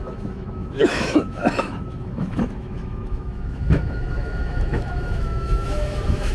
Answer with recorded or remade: remade